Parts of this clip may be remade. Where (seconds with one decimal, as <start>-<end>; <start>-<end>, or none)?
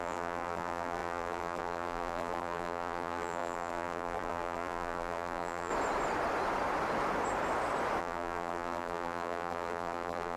0.0-5.7; 8.0-10.4